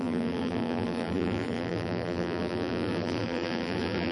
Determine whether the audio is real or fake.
fake